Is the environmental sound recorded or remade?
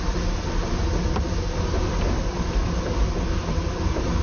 recorded